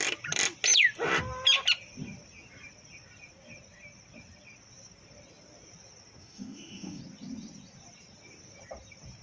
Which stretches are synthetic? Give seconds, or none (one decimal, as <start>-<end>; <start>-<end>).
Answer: 6.2-7.0